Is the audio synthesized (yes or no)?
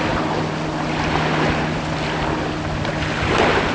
no